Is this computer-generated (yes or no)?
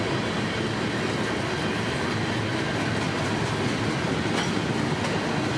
no